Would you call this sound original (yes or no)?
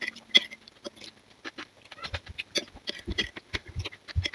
yes